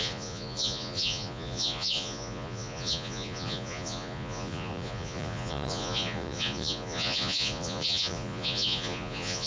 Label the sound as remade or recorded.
remade